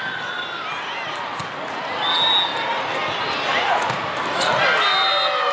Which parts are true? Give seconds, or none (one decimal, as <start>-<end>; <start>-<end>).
0.0-5.5